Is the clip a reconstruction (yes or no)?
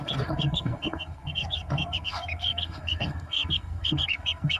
yes